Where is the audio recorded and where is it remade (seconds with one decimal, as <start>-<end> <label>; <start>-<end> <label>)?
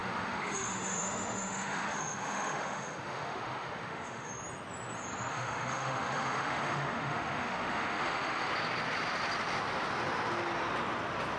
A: 0.0-4.3 remade; 4.3-5.3 recorded; 5.3-8.5 remade; 8.5-11.4 recorded